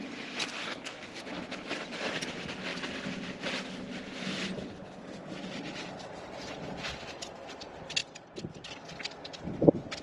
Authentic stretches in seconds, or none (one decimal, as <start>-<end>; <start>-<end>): 0.0-0.4; 1.2-10.0